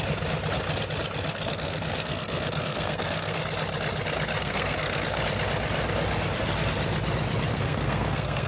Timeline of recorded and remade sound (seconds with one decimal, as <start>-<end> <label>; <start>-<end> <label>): 0.0-1.3 recorded; 1.3-3.4 remade; 3.4-4.4 recorded; 4.4-5.2 remade; 5.2-7.5 recorded; 7.5-8.5 remade